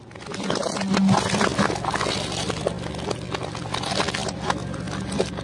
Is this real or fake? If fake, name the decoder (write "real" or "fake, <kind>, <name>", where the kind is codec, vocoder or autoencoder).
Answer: real